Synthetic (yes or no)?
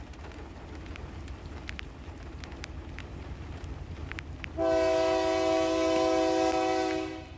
no